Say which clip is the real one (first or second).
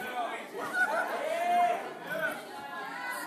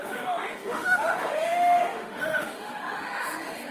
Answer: first